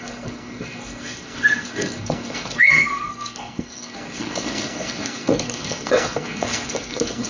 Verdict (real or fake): fake